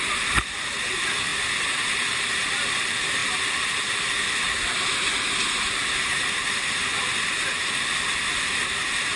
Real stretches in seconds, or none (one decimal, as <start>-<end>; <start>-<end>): 0.0-9.2